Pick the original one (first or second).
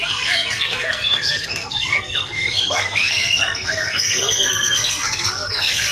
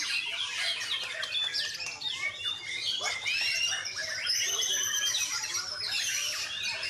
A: second